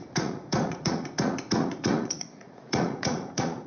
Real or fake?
fake